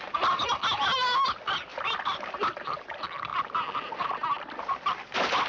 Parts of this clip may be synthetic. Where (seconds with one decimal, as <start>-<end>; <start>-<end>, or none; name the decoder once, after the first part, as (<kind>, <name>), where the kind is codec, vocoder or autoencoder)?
none